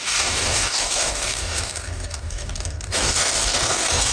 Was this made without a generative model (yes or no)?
no